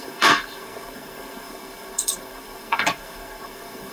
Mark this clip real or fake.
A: fake